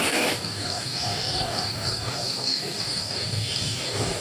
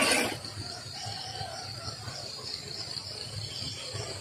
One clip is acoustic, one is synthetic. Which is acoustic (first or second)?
second